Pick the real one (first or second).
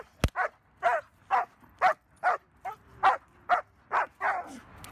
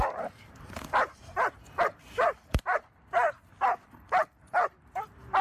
first